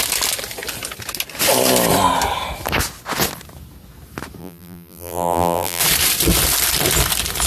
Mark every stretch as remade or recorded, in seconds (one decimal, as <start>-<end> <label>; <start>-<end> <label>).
0.0-4.4 recorded; 4.4-5.8 remade; 5.8-7.5 recorded